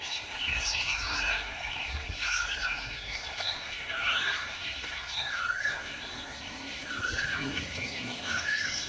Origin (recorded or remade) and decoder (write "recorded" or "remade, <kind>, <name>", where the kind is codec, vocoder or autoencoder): remade, codec, SNAC